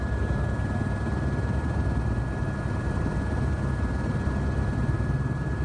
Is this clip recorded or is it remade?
recorded